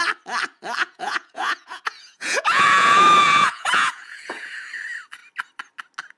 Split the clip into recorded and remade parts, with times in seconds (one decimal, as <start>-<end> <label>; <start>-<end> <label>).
0.0-0.8 recorded; 0.8-4.5 remade; 4.5-6.2 recorded